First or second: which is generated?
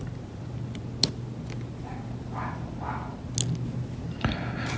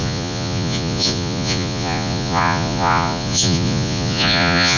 second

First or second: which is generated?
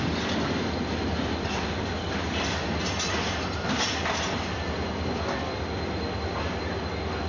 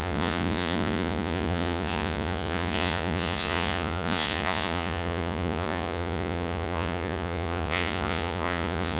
second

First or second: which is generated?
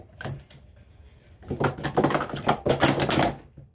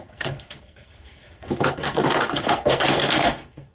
second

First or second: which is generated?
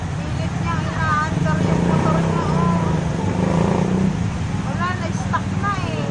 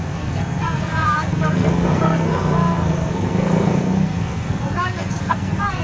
second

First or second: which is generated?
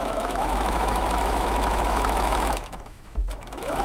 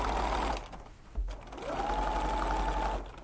first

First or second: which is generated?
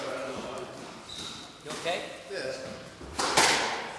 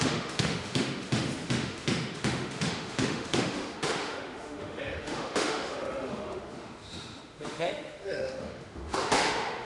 second